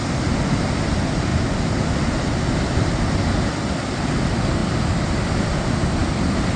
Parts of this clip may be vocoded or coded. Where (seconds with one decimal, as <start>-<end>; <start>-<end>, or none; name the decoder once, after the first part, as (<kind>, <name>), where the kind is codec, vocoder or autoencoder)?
none